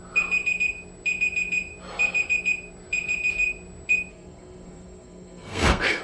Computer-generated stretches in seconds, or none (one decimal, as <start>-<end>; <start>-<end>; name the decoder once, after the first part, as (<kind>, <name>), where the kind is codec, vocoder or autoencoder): 4.1-6.0 (codec, SNAC)